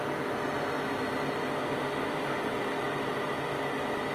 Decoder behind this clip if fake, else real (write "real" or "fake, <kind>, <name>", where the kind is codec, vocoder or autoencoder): real